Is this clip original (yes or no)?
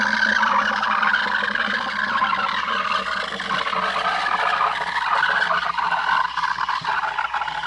yes